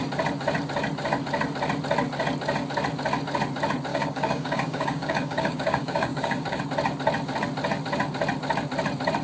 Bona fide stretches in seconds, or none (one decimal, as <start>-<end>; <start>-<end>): 0.0-3.9; 6.6-9.2